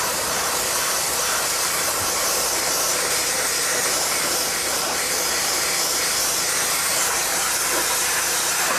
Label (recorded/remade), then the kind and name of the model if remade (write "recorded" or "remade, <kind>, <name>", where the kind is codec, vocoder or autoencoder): remade, vocoder, BigVGAN v2